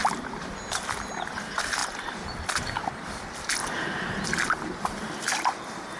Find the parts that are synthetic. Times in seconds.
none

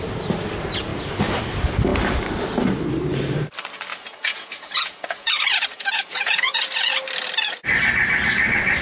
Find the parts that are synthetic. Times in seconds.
3.9-7.0 (vocoder, Vocos)

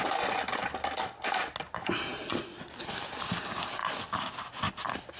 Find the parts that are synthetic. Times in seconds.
none

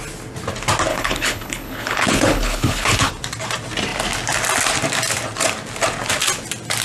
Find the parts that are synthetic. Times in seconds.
0.9-3.1 (codec, HILCodec)

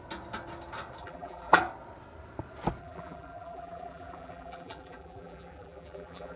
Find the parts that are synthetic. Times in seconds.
1.0-1.6 (vocoder, BigVGAN v2); 2.8-6.4

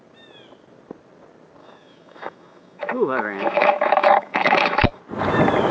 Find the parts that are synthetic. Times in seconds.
1.6-5.0 (autoencoder, DAC-VAE)

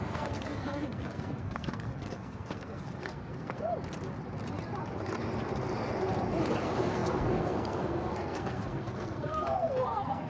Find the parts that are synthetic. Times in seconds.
0.0-3.7 (codec, SNAC); 6.6-10.3